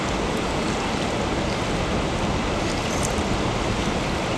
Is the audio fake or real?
real